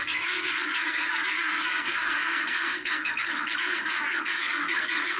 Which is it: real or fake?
fake